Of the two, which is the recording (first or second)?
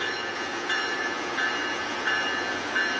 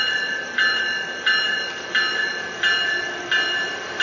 second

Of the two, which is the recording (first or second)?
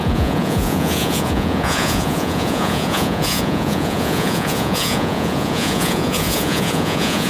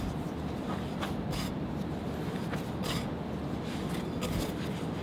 second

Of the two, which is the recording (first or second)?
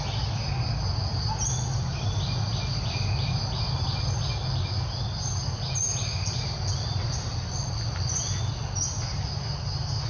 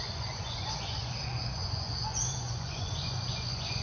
first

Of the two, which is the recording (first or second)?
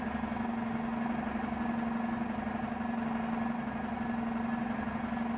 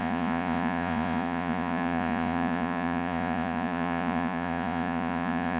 first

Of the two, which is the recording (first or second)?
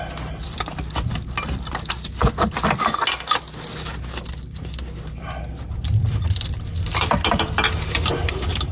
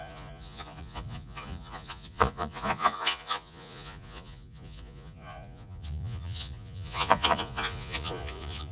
first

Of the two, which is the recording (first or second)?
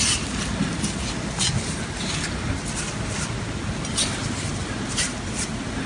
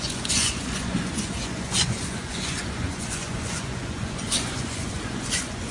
first